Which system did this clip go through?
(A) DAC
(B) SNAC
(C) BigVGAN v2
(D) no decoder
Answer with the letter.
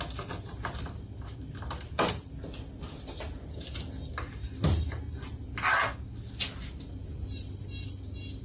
D